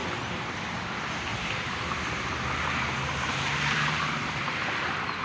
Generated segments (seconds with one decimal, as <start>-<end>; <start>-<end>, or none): 0.0-0.8; 1.3-4.4